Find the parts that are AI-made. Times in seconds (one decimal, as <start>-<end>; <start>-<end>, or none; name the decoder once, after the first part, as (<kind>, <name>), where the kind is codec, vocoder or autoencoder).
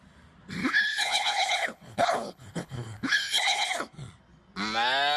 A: 0.6-3.7 (codec, HILCodec)